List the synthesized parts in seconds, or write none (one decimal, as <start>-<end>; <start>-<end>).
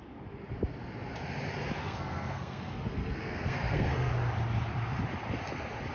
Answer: 1.8-4.1